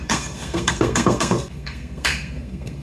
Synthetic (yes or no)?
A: yes